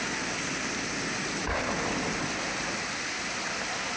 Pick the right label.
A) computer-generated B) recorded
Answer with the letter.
B